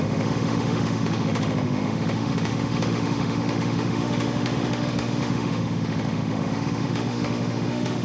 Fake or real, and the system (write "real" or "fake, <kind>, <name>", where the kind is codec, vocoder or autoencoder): fake, autoencoder, DAC-VAE